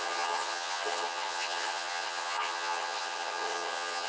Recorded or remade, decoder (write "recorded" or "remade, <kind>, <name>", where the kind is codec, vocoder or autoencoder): remade, vocoder, HiFi-GAN